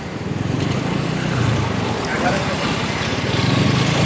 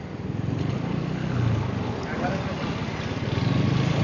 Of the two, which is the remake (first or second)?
first